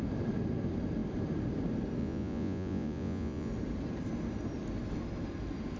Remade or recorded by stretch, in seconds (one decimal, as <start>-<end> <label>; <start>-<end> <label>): 0.0-2.0 recorded; 2.0-3.5 remade; 3.5-5.8 recorded